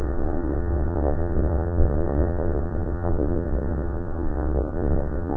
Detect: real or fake fake